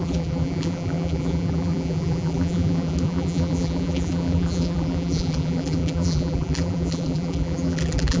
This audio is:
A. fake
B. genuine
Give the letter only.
A